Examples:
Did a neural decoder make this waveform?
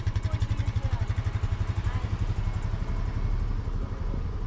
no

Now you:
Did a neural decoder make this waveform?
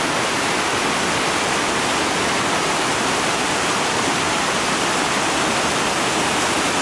no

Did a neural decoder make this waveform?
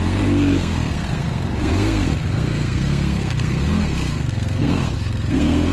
yes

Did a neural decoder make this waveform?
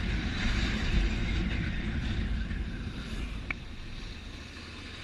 yes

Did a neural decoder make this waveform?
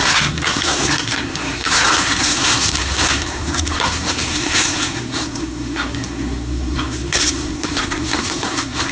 yes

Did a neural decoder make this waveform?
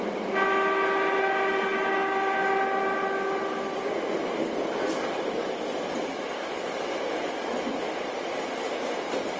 no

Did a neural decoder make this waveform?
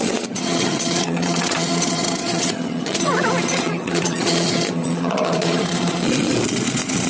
yes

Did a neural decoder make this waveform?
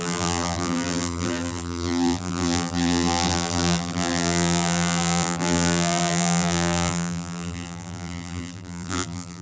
yes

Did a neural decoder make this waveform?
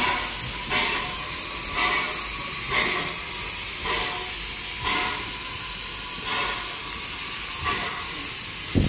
no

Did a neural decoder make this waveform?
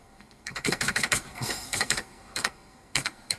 yes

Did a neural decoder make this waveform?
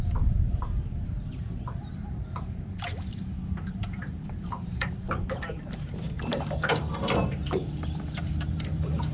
yes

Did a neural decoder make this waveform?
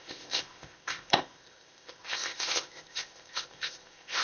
yes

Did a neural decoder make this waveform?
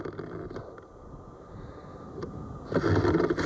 no